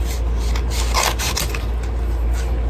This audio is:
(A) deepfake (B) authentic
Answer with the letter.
B